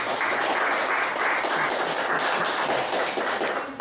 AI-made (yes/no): no